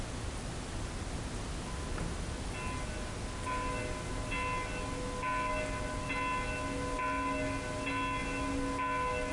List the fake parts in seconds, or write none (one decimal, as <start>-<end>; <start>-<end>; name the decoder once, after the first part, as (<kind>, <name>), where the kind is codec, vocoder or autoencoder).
none